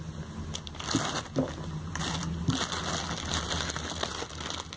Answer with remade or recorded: recorded